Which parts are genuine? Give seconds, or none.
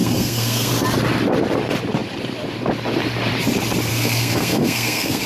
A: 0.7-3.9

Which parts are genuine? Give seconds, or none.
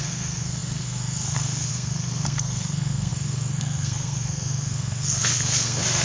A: none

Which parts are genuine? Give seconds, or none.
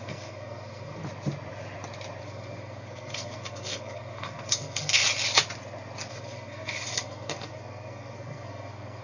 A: 1.0-2.2; 5.0-6.1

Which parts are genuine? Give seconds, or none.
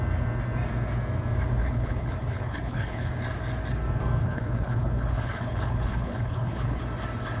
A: 0.0-1.6; 3.1-4.2; 6.8-7.4